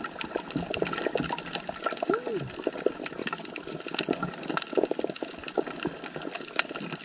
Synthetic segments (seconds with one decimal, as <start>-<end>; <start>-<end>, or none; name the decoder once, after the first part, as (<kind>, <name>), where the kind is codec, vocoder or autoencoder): 3.2-3.8 (codec, DAC)